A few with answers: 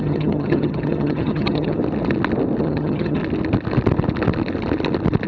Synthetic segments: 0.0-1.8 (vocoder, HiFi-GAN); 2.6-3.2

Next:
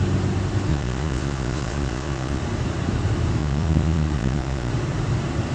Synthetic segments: 0.7-2.4 (vocoder, Vocos); 3.4-4.7

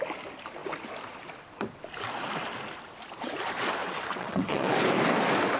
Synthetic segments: 3.8-4.7 (vocoder, WaveNeXt)

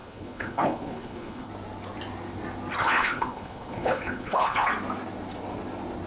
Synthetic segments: 0.0-1.5 (codec, HILCodec); 2.8-4.7

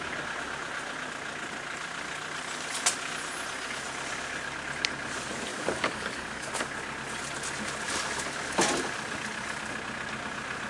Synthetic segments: 5.5-6.5 (codec, DAC)